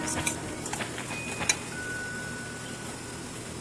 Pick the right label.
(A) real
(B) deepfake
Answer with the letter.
A